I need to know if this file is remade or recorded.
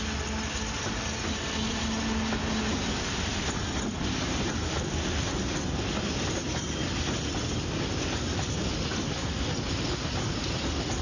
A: recorded